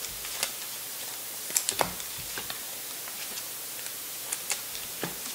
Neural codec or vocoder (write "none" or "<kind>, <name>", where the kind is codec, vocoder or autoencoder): none